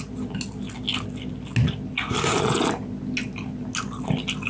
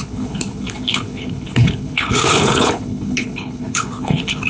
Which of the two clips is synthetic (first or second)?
second